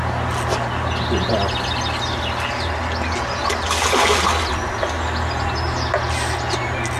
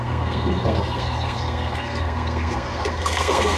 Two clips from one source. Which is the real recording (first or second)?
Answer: first